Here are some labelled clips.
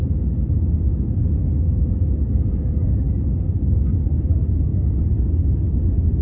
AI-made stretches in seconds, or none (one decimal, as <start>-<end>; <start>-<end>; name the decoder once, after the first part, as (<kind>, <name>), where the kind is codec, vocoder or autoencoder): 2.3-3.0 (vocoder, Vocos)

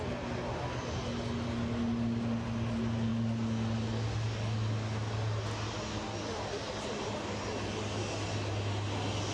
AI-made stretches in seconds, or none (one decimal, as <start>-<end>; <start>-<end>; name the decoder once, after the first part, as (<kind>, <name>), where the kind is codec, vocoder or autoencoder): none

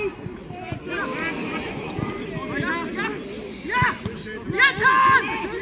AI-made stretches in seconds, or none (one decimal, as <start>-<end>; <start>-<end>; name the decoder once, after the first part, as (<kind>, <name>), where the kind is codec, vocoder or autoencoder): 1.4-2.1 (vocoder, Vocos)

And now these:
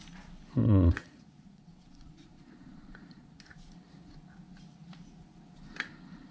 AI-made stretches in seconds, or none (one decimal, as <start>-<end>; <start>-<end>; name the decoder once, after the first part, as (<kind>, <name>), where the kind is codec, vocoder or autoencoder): 0.6-3.4 (vocoder, Vocos)